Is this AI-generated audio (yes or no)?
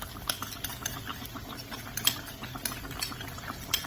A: no